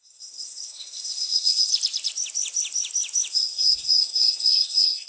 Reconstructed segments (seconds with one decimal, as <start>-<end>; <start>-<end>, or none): 0.0-1.7; 3.3-5.1